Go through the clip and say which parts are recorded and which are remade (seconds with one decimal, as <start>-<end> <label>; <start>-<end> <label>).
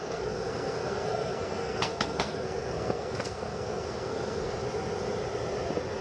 0.0-4.6 remade; 4.6-6.0 recorded